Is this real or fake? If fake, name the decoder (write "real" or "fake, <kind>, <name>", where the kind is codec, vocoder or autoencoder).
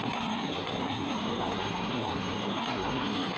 fake, codec, SNAC